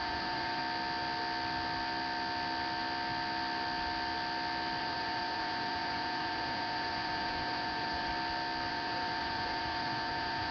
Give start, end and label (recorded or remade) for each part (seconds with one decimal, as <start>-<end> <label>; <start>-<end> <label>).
0.0-0.6 remade; 0.6-4.8 recorded; 4.8-8.1 remade; 8.1-8.7 recorded; 8.7-10.5 remade